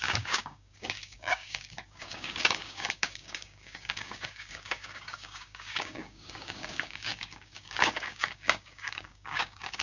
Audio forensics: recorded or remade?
remade